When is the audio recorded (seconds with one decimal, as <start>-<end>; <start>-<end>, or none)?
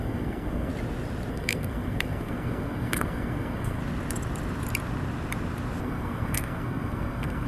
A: 0.7-1.3; 3.8-5.8